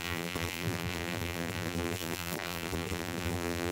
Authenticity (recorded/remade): remade